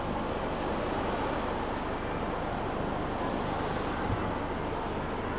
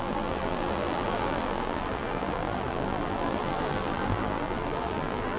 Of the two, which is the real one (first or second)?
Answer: first